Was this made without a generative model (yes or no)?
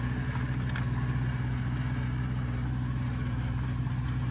yes